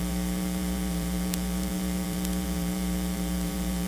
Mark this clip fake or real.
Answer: fake